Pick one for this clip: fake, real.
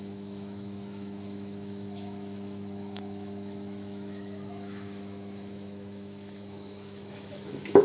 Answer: fake